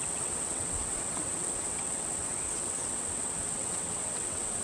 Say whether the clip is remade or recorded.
remade